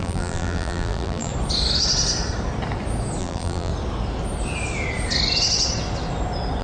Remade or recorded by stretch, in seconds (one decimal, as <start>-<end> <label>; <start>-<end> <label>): 0.0-1.3 remade; 1.3-3.2 recorded; 3.2-3.7 remade; 3.7-6.6 recorded